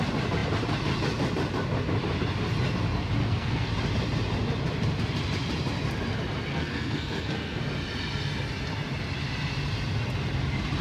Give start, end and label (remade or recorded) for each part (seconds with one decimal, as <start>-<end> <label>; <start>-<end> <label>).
0.0-3.2 recorded; 3.2-3.7 remade; 3.7-6.5 recorded; 6.5-7.6 remade; 7.6-10.8 recorded